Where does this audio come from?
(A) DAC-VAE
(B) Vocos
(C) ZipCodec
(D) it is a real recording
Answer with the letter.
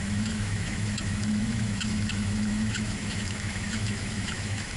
A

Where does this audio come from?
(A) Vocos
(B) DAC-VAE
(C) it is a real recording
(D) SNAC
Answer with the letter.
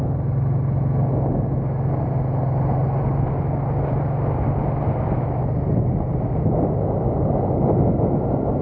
C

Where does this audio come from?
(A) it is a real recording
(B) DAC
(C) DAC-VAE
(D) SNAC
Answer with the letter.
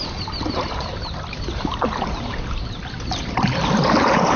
A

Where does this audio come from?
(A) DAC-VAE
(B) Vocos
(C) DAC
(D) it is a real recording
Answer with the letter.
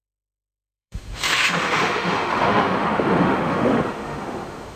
A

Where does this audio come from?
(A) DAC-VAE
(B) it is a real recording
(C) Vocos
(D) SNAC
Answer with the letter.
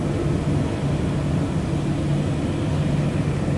B